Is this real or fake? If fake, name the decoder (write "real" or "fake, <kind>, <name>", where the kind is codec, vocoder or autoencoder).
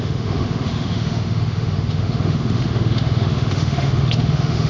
fake, autoencoder, DAC-VAE